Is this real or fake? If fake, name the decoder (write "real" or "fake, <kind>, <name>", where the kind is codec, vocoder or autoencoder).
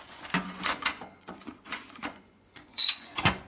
fake, vocoder, Vocos